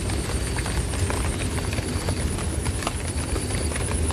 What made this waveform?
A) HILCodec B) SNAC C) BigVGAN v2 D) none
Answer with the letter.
C